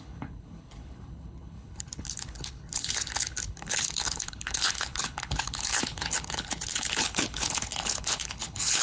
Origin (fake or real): fake